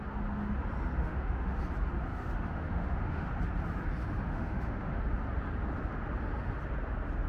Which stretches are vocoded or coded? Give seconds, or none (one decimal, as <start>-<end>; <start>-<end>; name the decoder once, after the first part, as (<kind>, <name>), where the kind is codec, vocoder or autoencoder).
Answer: 1.0-1.6 (autoencoder, DAC-VAE); 2.1-3.3; 4.3-5.0